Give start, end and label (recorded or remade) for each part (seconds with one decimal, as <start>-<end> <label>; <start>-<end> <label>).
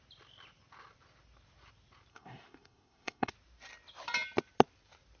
0.0-2.1 recorded; 2.1-3.3 remade; 3.3-5.2 recorded